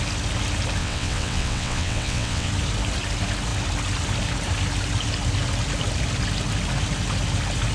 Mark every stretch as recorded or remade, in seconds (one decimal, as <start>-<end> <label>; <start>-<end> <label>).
0.0-0.8 recorded; 0.8-2.5 remade; 2.5-7.7 recorded

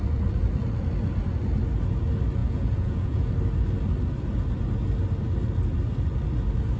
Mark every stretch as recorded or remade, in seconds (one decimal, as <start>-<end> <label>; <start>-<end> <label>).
0.0-2.4 recorded; 2.4-3.3 remade; 3.3-6.8 recorded

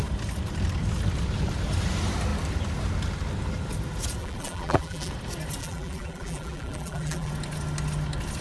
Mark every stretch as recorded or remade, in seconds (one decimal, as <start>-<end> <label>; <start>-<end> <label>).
0.0-4.2 recorded; 4.2-5.1 remade; 5.1-5.6 recorded; 5.6-7.3 remade; 7.3-8.4 recorded

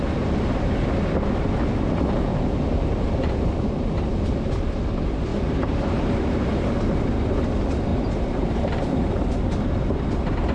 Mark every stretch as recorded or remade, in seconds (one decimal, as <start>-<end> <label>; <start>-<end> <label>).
0.0-2.3 recorded; 2.3-3.4 remade; 3.4-5.3 recorded; 5.3-7.0 remade; 7.0-7.9 recorded; 7.9-9.4 remade; 9.4-10.5 recorded

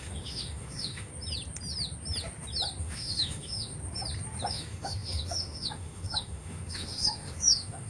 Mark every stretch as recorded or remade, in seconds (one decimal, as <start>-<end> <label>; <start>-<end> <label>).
0.0-1.1 remade; 1.1-2.8 recorded; 2.8-3.7 remade; 3.7-4.5 recorded; 4.5-7.9 remade